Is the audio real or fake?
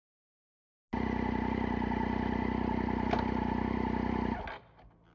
real